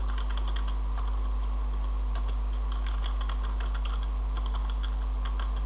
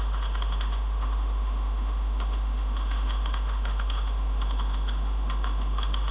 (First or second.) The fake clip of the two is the second